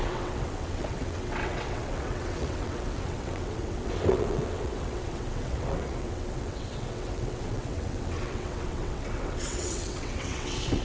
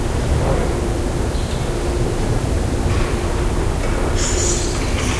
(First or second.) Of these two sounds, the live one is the second